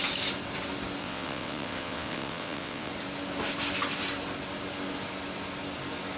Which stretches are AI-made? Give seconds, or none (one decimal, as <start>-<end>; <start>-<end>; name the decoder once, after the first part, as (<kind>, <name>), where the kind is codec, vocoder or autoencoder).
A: 1.0-2.9 (vocoder, WaveNeXt)